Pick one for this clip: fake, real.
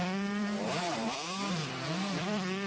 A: fake